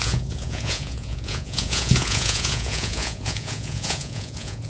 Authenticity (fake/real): fake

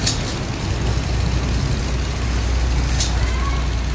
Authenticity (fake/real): real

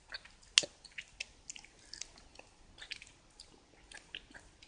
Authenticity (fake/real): real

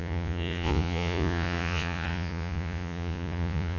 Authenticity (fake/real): fake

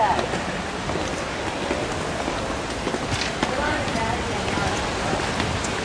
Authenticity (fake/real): real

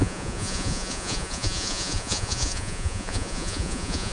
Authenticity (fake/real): fake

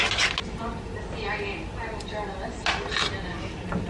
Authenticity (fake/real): real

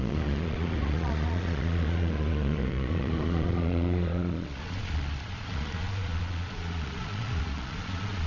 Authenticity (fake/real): fake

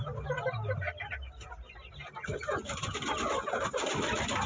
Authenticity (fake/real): real